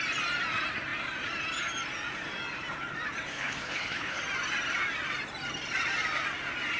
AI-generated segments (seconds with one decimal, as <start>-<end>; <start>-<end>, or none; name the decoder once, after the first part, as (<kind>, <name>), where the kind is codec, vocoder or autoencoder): 3.3-4.2 (codec, HILCodec)